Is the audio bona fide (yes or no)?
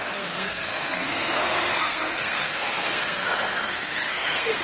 no